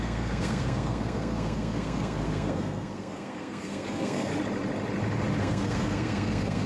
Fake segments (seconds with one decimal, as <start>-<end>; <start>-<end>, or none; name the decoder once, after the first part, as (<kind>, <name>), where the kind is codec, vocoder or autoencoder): 0.0-4.3 (codec, SNAC); 5.4-6.7